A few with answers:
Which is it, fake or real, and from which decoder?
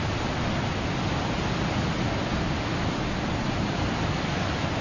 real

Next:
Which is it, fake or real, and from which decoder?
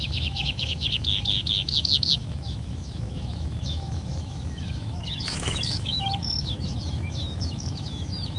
fake, autoencoder, DAC-VAE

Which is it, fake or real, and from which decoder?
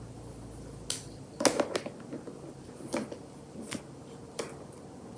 real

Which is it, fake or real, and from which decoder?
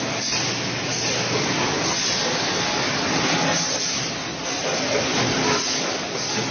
real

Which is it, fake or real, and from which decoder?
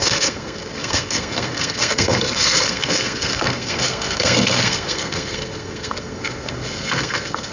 fake, codec, SNAC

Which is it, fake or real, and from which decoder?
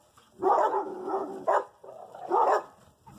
real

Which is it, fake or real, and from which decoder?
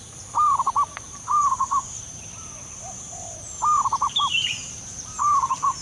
fake, vocoder, BigVGAN v2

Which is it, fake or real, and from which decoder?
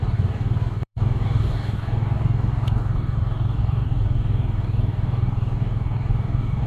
fake, codec, DAC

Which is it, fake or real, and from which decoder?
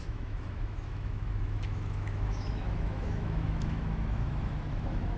fake, autoencoder, DAC-VAE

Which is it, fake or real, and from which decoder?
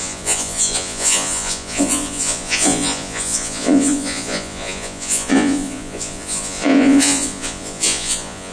fake, vocoder, Vocos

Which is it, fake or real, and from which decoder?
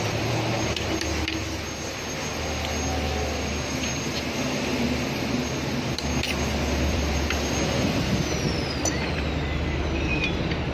fake, vocoder, BigVGAN v2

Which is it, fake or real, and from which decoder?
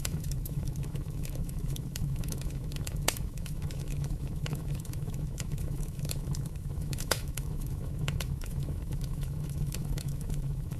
fake, autoencoder, DAC-VAE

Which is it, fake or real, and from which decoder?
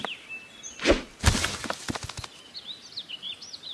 real